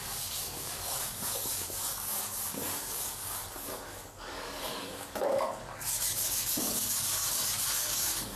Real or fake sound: fake